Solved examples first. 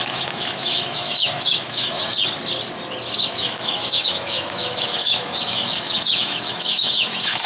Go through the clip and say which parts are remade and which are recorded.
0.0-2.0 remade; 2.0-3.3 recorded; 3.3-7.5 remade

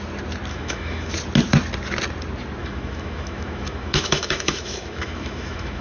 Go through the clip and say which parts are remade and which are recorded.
0.0-0.5 recorded; 0.5-1.1 remade; 1.1-2.6 recorded; 2.6-5.8 remade

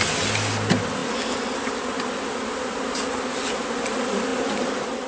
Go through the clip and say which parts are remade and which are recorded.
0.0-5.1 recorded

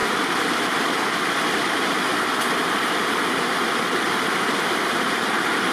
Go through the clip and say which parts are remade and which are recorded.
0.0-5.7 recorded

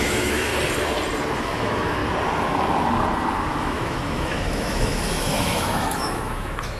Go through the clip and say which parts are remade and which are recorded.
0.0-0.5 remade; 0.5-1.4 recorded; 1.4-2.0 remade; 2.0-3.5 recorded; 3.5-6.8 remade

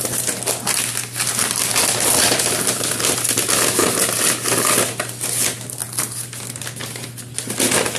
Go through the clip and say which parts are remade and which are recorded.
0.0-8.0 recorded

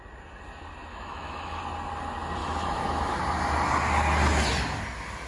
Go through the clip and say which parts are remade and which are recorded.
0.0-0.9 recorded; 0.9-1.6 remade; 1.6-2.4 recorded; 2.4-3.2 remade; 3.2-5.3 recorded